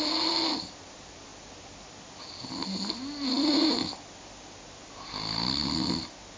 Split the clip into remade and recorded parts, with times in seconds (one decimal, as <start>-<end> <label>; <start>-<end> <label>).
0.0-6.4 recorded